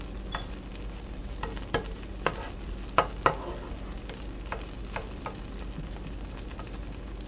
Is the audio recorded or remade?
recorded